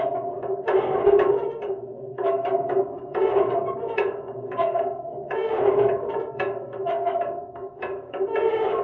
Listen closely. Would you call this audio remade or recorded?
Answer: remade